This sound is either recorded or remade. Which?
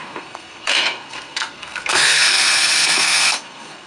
remade